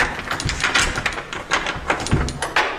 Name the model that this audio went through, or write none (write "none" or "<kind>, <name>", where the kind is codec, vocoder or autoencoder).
none